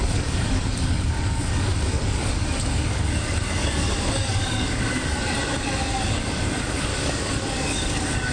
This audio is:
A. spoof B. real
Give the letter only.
A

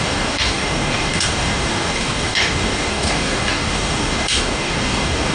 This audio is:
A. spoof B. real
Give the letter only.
A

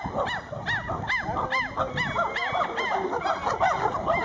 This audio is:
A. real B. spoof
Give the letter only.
A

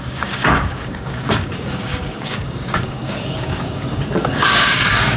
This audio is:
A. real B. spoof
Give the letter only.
B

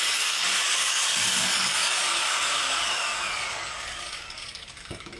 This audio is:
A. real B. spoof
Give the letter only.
B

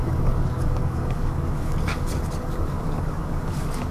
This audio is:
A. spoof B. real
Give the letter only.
A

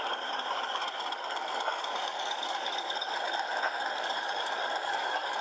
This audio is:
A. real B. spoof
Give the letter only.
B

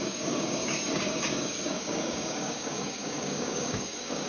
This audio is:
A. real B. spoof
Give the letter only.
B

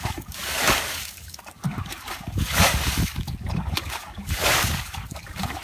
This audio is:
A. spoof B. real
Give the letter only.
A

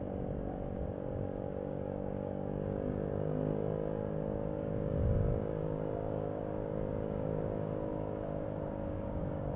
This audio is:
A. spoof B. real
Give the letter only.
A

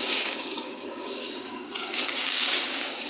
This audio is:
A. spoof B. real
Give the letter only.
A